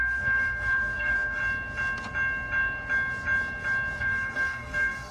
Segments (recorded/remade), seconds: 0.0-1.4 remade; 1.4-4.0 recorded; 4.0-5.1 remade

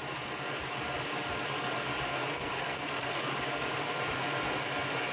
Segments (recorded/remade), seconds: 0.0-2.3 recorded; 2.3-3.2 remade; 3.2-5.1 recorded

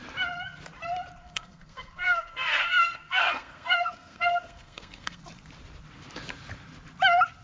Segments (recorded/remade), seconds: 0.0-1.2 recorded; 1.2-5.2 remade; 5.2-7.4 recorded